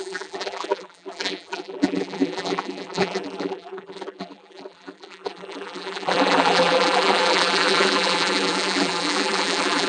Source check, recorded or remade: remade